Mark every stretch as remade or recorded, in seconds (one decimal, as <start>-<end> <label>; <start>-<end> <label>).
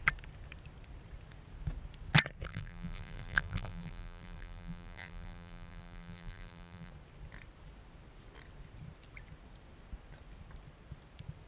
0.0-2.5 recorded; 2.5-6.9 remade; 6.9-11.5 recorded